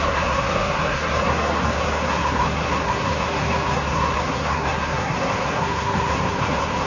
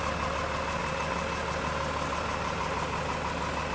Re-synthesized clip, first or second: first